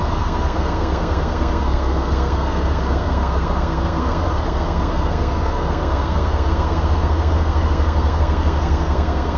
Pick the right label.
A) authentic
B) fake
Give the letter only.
B